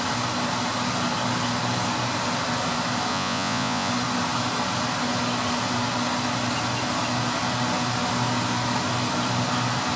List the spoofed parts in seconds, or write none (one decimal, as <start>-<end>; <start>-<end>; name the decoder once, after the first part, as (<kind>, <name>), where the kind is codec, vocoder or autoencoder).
3.1-3.9 (vocoder, Vocos)